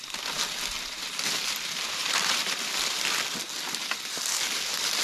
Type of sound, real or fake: real